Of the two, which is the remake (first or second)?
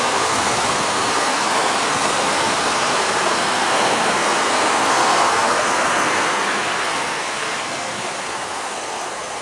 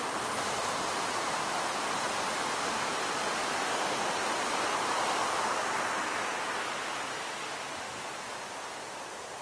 first